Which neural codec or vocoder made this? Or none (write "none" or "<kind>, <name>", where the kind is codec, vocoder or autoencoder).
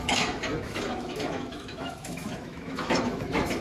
autoencoder, DAC-VAE